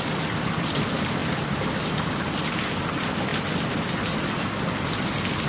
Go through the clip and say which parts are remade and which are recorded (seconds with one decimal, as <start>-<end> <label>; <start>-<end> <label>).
0.0-5.5 recorded